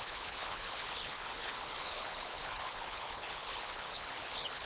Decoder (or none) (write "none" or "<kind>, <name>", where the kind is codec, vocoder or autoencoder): codec, HILCodec